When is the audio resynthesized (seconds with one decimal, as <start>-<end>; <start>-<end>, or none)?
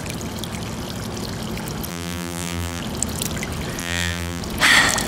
1.9-2.8; 3.8-4.4